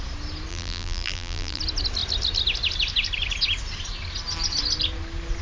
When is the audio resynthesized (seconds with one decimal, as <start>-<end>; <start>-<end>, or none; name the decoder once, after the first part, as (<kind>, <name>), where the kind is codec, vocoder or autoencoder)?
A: 0.5-1.6 (vocoder, BigVGAN v2)